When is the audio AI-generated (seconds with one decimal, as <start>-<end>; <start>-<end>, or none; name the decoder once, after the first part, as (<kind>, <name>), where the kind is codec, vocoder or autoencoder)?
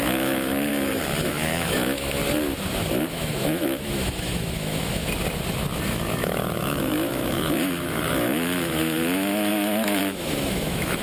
0.0-0.7 (autoencoder, DAC-VAE); 1.2-2.2; 3.1-5.0; 5.9-11.0